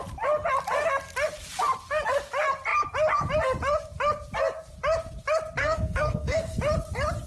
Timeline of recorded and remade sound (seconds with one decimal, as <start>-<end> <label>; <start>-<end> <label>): 0.0-5.6 recorded; 5.6-6.6 remade; 6.6-7.3 recorded